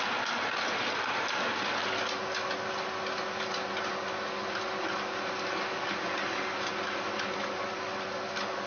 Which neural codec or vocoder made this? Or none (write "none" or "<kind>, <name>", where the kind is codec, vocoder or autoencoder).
none